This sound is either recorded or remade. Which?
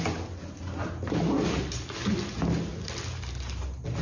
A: recorded